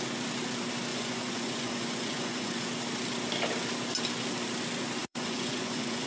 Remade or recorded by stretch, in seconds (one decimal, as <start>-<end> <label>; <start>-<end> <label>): 0.0-0.9 recorded; 0.9-2.7 remade; 2.7-5.0 recorded; 5.0-6.1 remade